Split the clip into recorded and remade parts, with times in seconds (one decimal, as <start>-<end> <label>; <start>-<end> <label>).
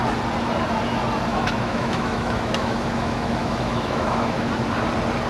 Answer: 0.0-1.3 recorded; 1.3-4.5 remade; 4.5-5.3 recorded